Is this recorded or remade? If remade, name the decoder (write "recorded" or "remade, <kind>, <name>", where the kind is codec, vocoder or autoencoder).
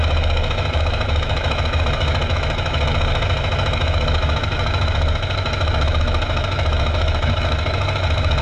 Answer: remade, autoencoder, DAC-VAE